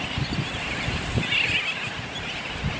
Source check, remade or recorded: recorded